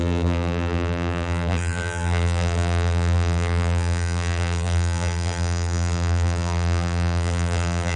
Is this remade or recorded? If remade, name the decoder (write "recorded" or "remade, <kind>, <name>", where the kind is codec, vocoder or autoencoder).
remade, vocoder, BigVGAN v2